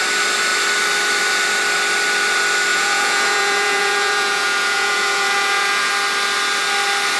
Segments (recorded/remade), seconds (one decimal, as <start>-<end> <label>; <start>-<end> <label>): 0.0-2.7 recorded; 2.7-5.9 remade; 5.9-7.2 recorded